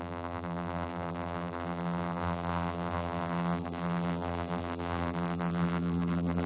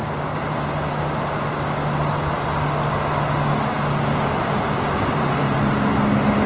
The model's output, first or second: first